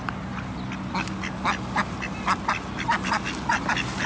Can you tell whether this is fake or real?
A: real